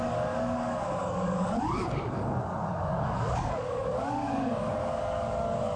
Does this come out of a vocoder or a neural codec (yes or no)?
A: yes